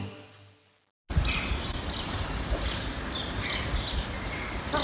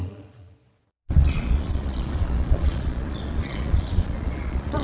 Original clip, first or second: first